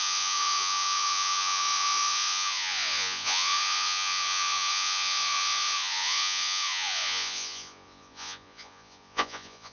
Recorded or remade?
remade